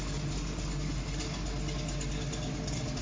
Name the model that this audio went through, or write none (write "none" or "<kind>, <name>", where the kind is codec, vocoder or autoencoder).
none